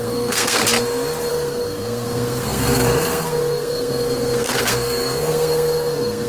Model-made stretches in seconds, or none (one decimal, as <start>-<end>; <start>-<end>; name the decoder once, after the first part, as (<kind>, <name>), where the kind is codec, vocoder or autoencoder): 0.0-0.6 (codec, SNAC); 1.3-6.3